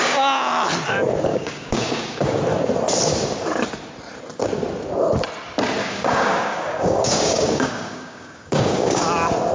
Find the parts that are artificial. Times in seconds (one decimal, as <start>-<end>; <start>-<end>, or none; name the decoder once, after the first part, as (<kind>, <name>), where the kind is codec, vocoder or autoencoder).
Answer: 0.0-0.5 (codec, DAC); 1.3-2.4; 5.8-9.0